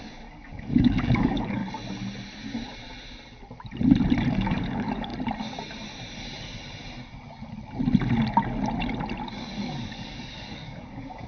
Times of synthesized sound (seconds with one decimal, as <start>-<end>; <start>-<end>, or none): 0.0-1.6; 4.3-5.1; 9.4-11.3